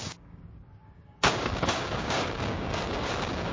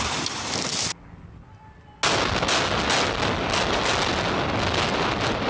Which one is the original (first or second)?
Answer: second